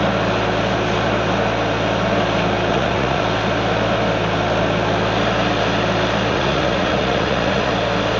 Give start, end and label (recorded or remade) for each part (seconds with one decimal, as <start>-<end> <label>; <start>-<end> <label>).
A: 0.0-2.7 recorded; 2.7-3.2 remade; 3.2-6.3 recorded; 6.3-7.7 remade; 7.7-8.2 recorded